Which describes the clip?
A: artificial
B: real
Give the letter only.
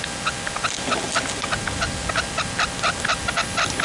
B